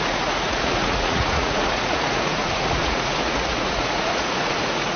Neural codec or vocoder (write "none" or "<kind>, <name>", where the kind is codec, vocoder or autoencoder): vocoder, Vocos